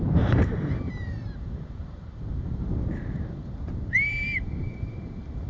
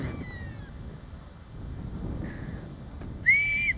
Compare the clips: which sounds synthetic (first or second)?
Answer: first